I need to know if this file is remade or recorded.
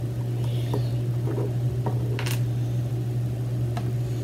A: recorded